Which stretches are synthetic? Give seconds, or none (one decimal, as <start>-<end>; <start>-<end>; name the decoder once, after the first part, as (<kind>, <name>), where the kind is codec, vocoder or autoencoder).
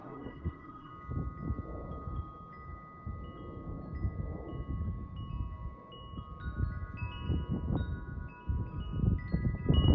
0.0-0.9 (codec, SNAC)